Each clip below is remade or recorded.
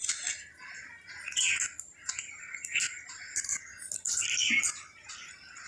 recorded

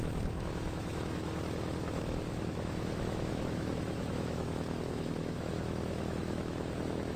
remade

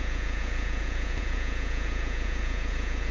remade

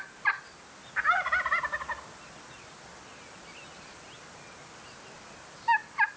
recorded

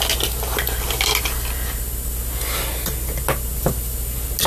recorded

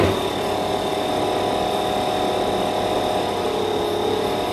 recorded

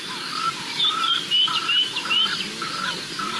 recorded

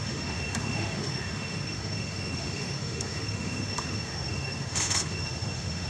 remade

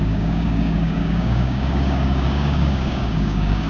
remade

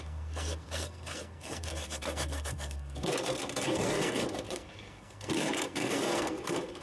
remade